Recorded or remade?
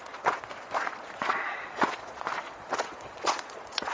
remade